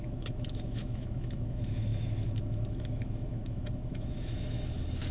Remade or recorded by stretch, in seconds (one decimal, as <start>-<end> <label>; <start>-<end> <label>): 0.0-5.1 remade